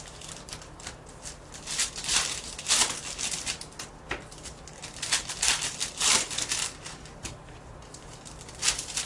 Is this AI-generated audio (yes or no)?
no